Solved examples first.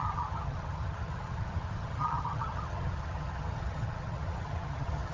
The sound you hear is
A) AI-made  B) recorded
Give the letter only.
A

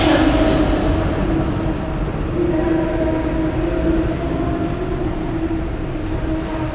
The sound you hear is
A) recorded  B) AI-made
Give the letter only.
A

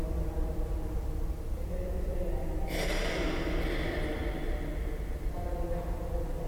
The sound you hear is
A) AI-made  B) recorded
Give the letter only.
B